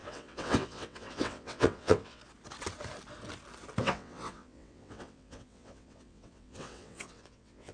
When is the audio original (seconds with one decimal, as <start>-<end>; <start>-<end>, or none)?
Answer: 2.2-3.8